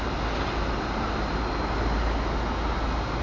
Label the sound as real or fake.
real